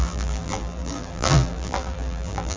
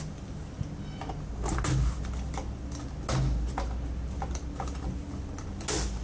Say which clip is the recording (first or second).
second